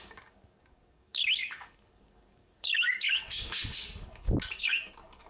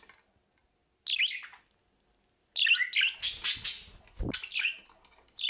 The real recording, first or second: second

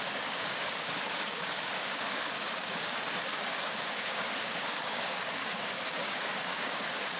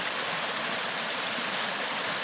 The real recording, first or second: second